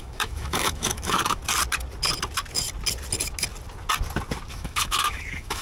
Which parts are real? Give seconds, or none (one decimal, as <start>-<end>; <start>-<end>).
1.4-4.5